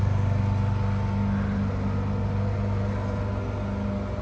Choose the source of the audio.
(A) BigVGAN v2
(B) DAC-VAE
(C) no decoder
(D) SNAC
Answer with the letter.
C